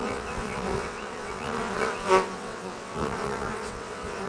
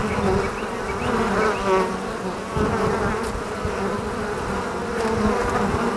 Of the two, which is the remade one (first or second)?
first